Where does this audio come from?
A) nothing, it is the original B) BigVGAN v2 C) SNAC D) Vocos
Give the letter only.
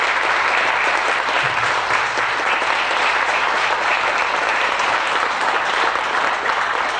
B